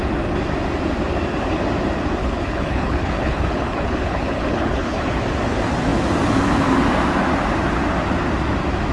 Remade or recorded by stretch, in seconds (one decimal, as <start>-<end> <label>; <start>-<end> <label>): 0.0-2.2 recorded; 2.2-5.2 remade; 5.2-8.9 recorded